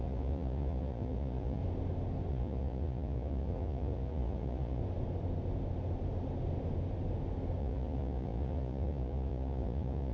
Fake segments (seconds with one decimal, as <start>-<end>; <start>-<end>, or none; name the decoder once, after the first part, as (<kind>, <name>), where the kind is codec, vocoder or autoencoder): 0.0-1.6 (vocoder, Vocos); 2.3-4.8; 7.6-10.1